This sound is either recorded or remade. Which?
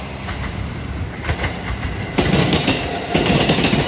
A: remade